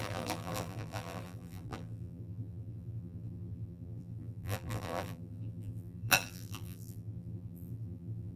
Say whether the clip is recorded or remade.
remade